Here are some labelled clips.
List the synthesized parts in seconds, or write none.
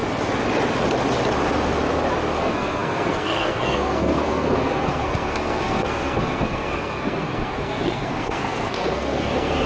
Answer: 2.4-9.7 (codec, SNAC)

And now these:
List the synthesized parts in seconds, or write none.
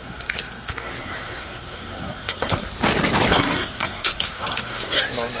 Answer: 0.0-2.7 (codec, SNAC); 3.3-5.0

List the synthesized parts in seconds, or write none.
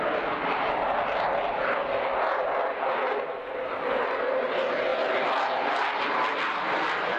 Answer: none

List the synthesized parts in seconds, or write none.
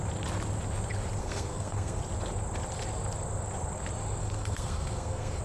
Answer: 1.2-2.0 (codec, SNAC); 4.2-5.4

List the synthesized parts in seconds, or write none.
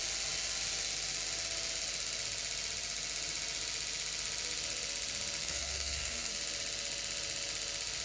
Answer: 5.4-6.3 (codec, SNAC)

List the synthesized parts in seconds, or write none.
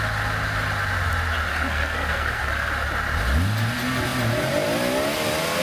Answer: 1.5-2.7 (codec, SNAC)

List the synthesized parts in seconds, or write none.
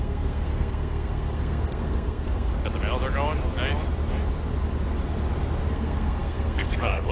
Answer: 0.0-2.5 (codec, SNAC); 5.7-7.1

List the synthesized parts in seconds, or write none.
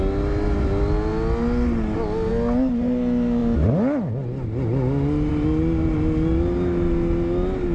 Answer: none